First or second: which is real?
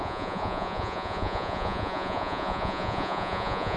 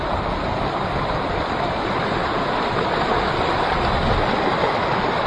second